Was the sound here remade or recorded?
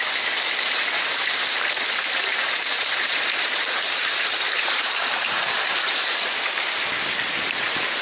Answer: remade